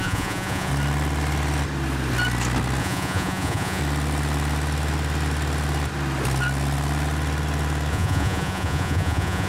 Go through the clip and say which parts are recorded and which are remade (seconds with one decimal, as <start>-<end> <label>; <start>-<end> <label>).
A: 0.0-0.7 remade; 0.7-2.8 recorded; 2.8-3.8 remade; 3.8-7.9 recorded; 7.9-9.5 remade